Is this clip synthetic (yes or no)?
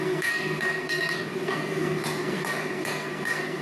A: yes